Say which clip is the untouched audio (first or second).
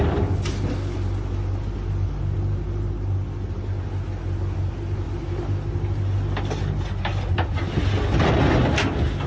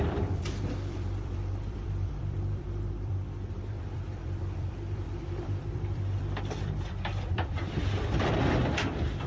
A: first